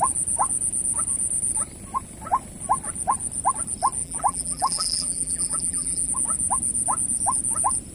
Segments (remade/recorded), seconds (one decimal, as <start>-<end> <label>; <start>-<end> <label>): 0.0-4.0 recorded; 4.0-6.1 remade; 6.1-7.9 recorded